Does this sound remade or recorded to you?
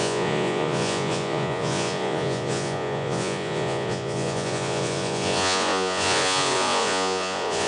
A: remade